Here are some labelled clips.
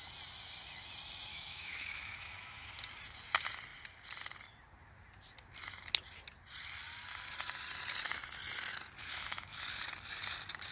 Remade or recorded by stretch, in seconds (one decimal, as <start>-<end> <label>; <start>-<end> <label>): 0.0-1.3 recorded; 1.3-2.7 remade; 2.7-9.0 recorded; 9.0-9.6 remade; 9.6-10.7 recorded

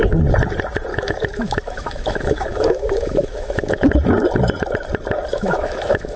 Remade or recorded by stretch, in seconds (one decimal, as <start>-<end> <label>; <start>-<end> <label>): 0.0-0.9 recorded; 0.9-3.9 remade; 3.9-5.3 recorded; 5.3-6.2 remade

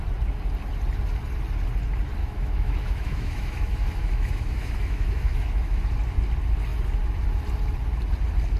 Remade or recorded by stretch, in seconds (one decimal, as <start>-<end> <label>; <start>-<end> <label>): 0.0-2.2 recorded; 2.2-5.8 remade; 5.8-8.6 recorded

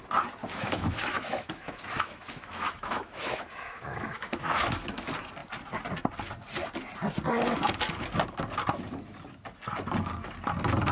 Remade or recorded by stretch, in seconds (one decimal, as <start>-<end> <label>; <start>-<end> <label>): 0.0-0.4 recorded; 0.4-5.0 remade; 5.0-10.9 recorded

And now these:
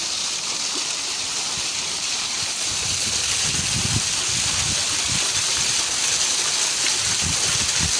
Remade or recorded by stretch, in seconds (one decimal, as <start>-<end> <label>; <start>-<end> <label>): 0.0-1.3 recorded; 1.3-3.1 remade; 3.1-4.8 recorded; 4.8-5.7 remade; 5.7-8.0 recorded

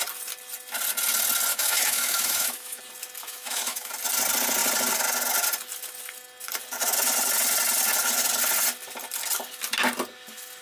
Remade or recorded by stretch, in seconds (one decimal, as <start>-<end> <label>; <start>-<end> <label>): 0.0-1.5 recorded; 1.5-2.8 remade; 2.8-3.2 recorded; 3.2-3.9 remade; 3.9-10.6 recorded

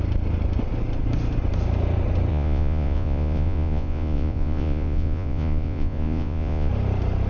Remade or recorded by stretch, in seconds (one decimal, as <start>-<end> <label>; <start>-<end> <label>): 0.0-2.3 recorded; 2.3-6.7 remade; 6.7-7.3 recorded